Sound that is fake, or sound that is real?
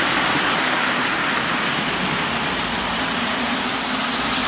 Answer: real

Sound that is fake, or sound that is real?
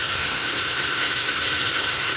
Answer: fake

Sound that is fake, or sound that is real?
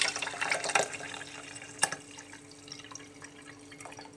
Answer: real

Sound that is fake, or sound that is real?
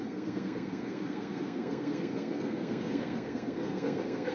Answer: fake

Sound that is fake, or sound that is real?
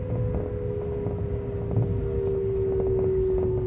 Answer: real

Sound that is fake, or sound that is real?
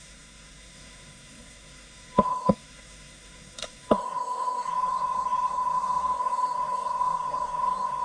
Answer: fake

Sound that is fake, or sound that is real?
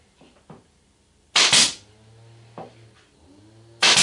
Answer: real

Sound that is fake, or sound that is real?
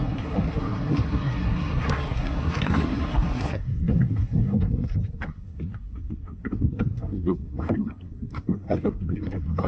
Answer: fake